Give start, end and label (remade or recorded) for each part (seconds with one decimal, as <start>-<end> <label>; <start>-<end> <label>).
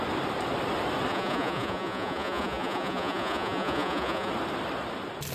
0.0-1.1 recorded; 1.1-4.3 remade; 4.3-5.3 recorded